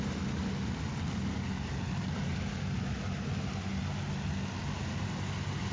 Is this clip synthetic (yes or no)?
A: no